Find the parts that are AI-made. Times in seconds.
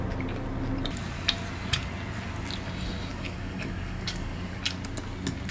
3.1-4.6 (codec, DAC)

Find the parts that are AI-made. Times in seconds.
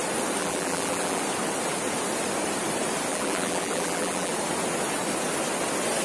0.4-1.2 (vocoder, BigVGAN v2); 3.1-4.3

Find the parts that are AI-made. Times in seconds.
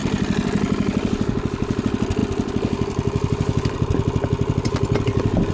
none